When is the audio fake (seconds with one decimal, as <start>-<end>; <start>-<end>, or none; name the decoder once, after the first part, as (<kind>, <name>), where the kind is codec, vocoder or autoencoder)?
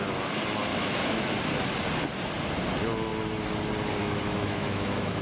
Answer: 0.7-1.4 (autoencoder, DAC-VAE); 4.0-5.2